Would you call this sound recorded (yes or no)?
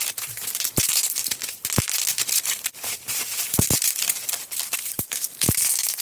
no